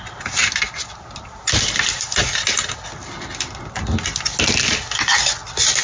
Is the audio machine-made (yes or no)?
no